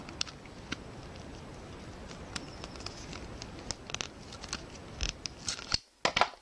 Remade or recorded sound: recorded